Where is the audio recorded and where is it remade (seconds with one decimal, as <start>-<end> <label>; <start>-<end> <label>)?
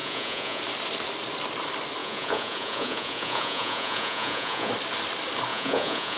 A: 0.0-0.6 remade; 0.6-2.0 recorded; 2.0-4.7 remade; 4.7-5.5 recorded; 5.5-6.2 remade